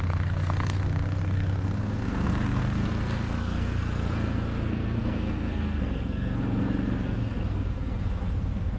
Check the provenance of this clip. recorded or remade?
remade